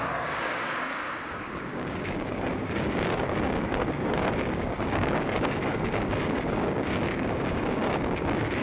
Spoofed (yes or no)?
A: yes